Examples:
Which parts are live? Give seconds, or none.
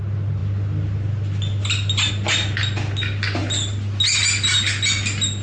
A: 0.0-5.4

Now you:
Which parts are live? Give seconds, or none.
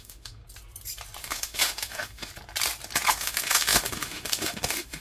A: 0.4-1.2; 2.3-3.1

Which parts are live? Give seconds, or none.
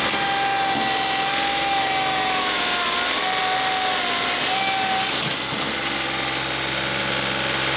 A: 0.0-1.5; 2.6-7.8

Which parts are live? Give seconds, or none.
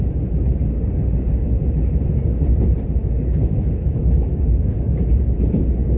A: 0.0-3.0; 5.0-6.0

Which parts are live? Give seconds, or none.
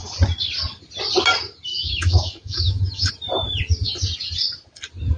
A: 0.0-1.7; 3.1-5.2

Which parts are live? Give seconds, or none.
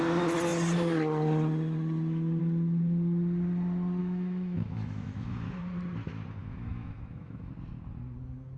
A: 0.0-4.0; 5.5-6.4; 7.5-8.6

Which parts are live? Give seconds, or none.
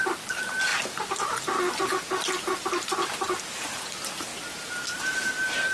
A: 0.0-5.7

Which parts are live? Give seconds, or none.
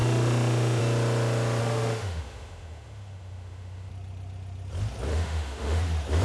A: 0.8-1.6; 3.9-5.1; 5.8-6.2